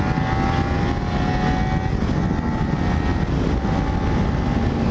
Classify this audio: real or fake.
real